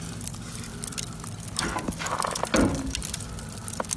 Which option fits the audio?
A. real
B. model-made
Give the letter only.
A